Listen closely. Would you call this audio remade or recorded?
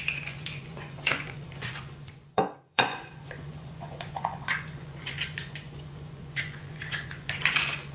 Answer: remade